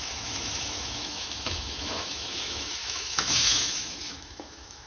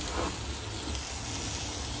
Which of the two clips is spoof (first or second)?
first